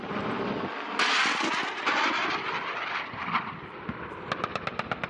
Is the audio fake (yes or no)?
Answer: no